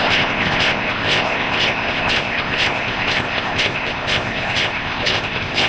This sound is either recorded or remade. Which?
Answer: remade